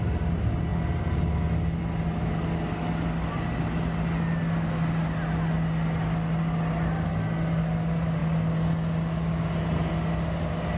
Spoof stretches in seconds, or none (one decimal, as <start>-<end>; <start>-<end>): none